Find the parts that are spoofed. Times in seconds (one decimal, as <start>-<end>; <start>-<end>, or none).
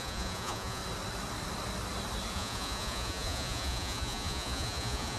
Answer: 0.0-0.8; 2.3-5.2